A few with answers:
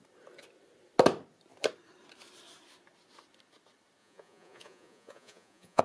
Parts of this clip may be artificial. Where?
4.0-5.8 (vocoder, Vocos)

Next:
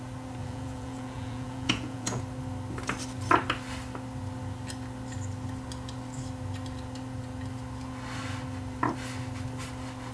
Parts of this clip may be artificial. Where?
0.4-2.2 (vocoder, Vocos)

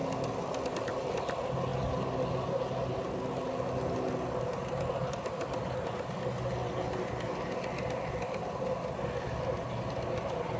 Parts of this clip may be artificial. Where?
none

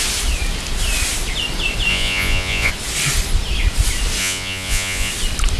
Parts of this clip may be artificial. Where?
1.9-2.7 (vocoder, Vocos); 4.2-5.1

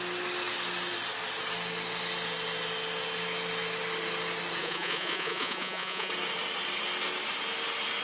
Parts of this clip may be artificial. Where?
4.6-6.1 (vocoder, Vocos)

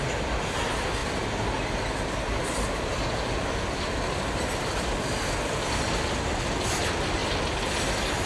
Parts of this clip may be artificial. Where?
none